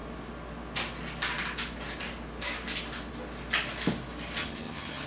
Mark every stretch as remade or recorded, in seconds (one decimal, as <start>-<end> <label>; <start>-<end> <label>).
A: 0.0-4.4 recorded; 4.4-5.1 remade